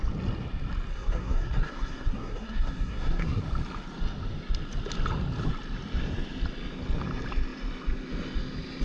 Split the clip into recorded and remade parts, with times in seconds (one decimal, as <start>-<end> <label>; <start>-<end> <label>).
0.0-0.9 recorded; 0.9-3.4 remade; 3.4-8.8 recorded